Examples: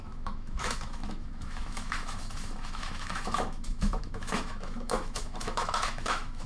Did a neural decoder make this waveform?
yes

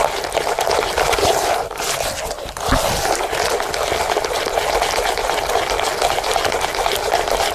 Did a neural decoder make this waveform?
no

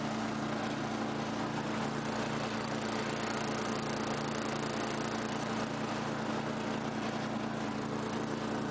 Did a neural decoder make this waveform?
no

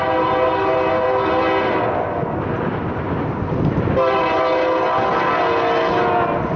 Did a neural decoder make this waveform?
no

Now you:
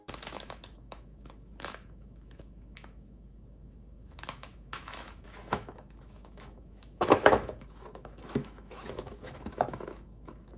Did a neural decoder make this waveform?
yes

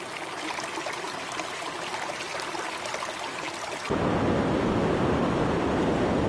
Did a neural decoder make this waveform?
no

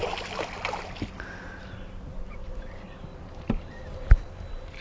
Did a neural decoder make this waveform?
no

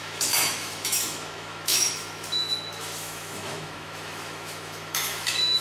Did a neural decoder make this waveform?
yes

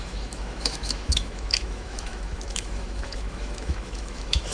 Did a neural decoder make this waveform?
yes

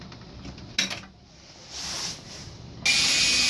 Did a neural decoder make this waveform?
no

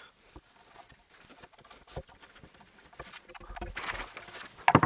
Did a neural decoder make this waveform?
no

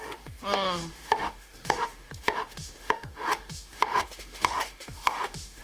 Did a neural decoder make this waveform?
yes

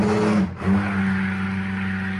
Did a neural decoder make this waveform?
no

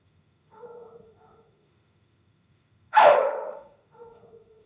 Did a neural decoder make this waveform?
yes